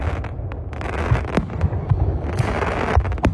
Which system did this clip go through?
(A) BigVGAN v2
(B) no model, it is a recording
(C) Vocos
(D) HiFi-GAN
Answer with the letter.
B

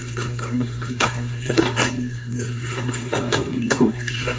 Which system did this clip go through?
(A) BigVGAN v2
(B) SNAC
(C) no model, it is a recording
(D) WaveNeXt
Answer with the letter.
B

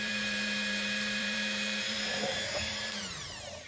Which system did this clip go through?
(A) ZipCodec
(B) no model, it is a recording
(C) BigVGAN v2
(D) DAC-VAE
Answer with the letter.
C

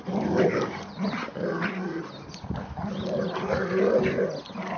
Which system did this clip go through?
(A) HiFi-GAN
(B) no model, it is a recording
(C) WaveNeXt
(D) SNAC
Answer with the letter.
B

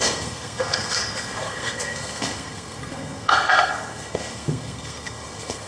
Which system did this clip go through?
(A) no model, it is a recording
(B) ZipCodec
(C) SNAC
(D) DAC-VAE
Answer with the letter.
C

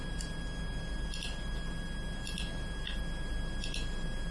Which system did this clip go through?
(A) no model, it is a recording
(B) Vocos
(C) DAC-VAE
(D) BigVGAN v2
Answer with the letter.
A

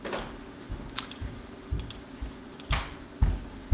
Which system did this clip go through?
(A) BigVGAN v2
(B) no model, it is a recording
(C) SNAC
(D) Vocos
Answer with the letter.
B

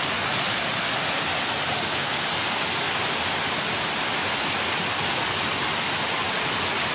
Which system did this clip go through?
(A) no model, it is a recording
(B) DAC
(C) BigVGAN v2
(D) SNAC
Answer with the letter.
A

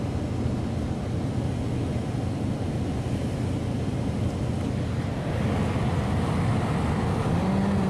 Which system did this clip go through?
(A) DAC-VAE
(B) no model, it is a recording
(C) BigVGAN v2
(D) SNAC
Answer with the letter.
B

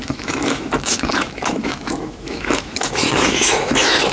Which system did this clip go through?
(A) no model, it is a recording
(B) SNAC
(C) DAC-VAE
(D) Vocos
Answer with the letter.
C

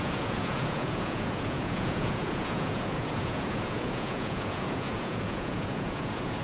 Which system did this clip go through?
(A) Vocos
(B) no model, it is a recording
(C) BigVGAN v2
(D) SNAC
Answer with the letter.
A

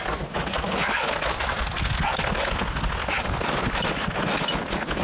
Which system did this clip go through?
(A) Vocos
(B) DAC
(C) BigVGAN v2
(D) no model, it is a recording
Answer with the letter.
D